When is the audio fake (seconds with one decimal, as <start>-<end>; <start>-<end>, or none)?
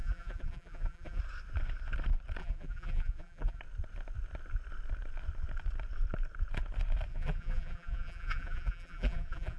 0.0-1.2; 2.4-3.6; 7.1-9.6